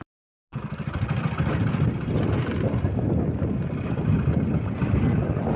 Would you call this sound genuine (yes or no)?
yes